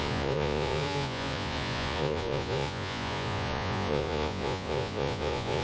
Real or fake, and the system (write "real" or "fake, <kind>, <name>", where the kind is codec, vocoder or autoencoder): fake, vocoder, Vocos